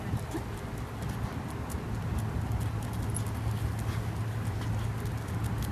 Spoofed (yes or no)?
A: no